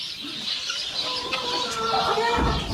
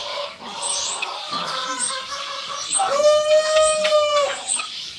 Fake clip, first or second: second